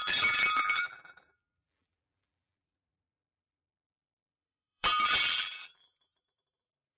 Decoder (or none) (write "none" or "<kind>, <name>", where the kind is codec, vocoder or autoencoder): vocoder, BigVGAN v2